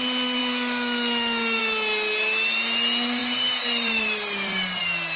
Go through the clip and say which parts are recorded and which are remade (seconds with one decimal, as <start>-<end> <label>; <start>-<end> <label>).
0.0-3.2 recorded; 3.2-4.8 remade; 4.8-5.2 recorded